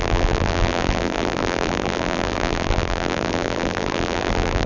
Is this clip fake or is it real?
fake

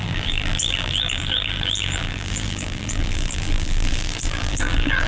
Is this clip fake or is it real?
fake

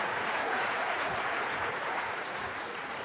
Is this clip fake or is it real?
fake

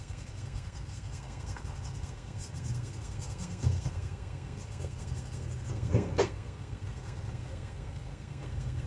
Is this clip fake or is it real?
fake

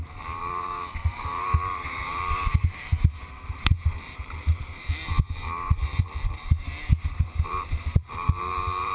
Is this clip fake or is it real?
fake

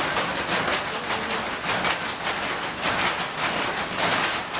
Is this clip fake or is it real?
real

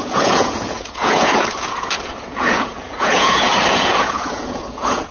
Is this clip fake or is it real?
fake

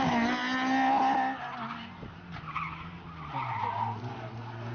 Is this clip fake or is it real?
real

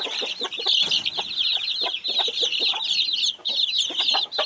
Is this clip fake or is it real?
real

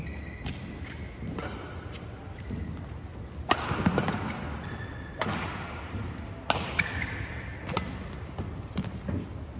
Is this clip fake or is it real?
real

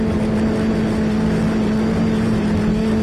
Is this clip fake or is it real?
real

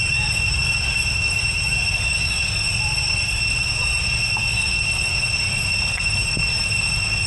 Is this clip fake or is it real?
real